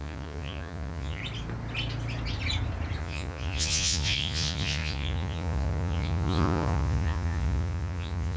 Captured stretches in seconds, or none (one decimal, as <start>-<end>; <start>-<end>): 1.2-3.0